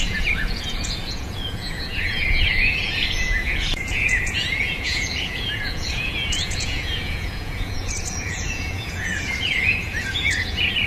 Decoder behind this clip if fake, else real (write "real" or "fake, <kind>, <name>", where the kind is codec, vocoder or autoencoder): fake, vocoder, Vocos